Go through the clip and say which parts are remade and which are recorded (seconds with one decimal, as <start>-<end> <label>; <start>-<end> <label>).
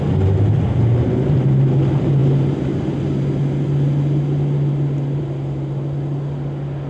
0.0-6.9 recorded